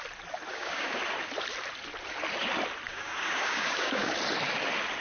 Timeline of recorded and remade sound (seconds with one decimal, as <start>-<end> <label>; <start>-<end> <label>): 0.0-0.5 recorded; 0.5-1.0 remade; 1.0-2.9 recorded; 2.9-4.1 remade; 4.1-5.0 recorded